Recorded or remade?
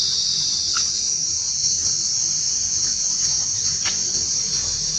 recorded